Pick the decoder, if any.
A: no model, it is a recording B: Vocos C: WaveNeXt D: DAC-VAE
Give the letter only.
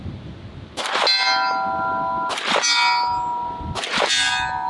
A